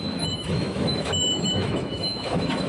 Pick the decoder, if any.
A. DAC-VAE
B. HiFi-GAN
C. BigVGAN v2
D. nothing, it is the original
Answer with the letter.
A